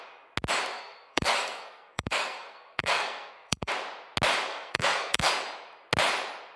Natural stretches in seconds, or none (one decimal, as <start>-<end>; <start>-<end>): 0.0-0.7; 3.7-4.5; 5.3-6.6